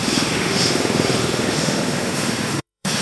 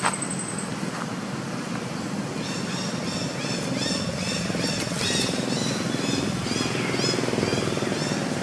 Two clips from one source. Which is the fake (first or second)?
first